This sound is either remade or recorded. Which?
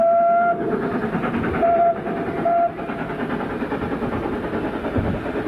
recorded